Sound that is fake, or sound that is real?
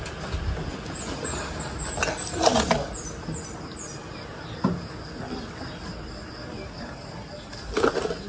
real